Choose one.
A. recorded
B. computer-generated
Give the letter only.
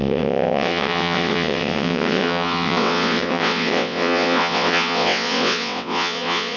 B